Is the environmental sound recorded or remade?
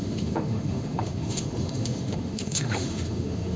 remade